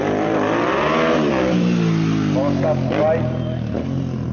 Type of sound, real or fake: real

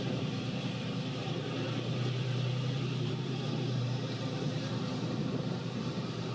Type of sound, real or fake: fake